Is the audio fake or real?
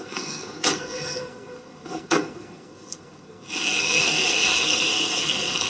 fake